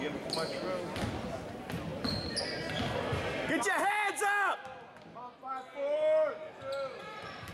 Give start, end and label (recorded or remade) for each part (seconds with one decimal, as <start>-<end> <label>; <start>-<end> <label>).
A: 0.0-7.5 recorded